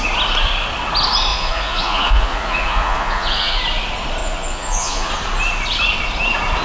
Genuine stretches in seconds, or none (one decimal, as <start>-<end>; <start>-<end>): 0.0-1.3; 3.6-4.2; 5.1-6.6